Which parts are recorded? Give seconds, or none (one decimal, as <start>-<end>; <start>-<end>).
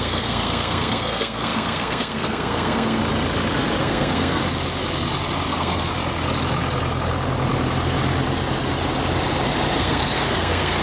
3.0-3.8; 4.4-5.5; 5.9-9.8